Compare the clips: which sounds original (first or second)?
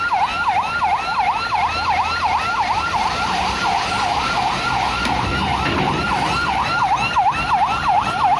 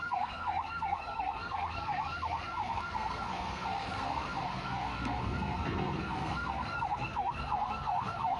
first